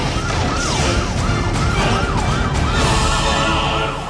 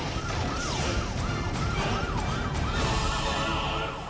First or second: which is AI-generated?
second